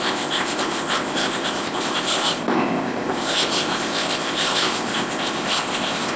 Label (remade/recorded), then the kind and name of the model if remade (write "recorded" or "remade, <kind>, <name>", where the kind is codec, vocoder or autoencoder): remade, codec, ZipCodec